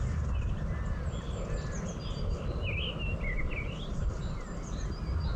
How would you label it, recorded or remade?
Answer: recorded